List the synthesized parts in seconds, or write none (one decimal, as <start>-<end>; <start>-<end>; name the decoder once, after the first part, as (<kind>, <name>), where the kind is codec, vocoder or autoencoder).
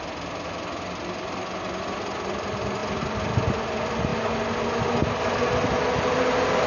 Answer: 2.8-3.5 (vocoder, BigVGAN v2)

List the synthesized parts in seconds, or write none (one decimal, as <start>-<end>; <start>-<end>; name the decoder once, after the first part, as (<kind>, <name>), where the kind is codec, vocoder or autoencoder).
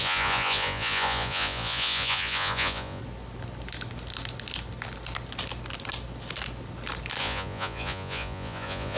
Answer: 0.0-3.0 (vocoder, Vocos); 7.2-9.0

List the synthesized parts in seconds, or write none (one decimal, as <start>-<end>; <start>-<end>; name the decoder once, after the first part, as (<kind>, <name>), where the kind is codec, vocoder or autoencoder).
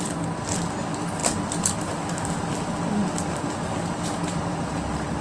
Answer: 1.2-2.5 (vocoder, BigVGAN v2)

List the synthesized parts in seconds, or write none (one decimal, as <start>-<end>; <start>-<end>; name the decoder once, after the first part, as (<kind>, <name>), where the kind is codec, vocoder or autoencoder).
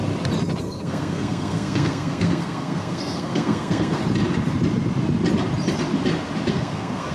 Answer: 0.6-4.0 (codec, SNAC); 6.5-7.1